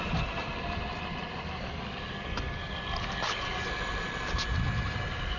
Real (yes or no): yes